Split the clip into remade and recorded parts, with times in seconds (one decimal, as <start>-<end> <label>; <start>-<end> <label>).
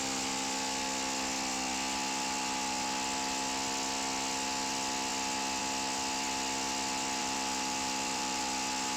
0.0-7.2 recorded; 7.2-8.4 remade; 8.4-9.0 recorded